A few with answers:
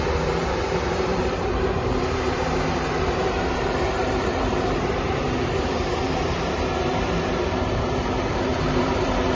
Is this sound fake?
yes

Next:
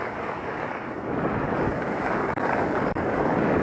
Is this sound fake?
yes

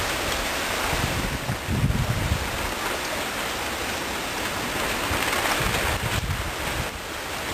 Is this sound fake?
no